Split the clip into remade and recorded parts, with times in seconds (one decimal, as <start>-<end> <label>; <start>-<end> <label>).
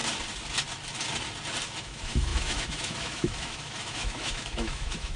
0.0-1.8 recorded; 1.8-5.2 remade